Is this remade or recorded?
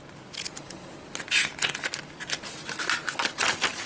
recorded